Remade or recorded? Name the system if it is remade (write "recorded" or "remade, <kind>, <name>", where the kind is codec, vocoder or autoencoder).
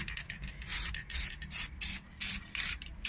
recorded